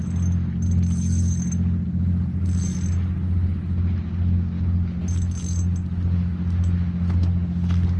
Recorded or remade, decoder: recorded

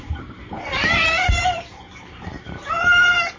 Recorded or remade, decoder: remade, vocoder, BigVGAN v2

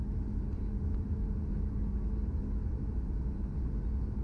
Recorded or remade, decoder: recorded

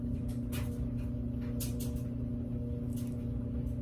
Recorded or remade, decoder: recorded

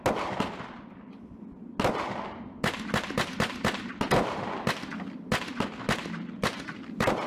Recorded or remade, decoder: recorded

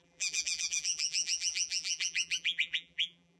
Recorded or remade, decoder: remade, vocoder, BigVGAN v2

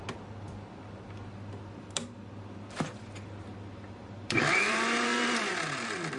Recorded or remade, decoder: remade, vocoder, BigVGAN v2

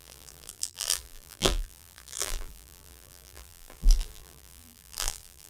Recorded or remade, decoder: remade, vocoder, BigVGAN v2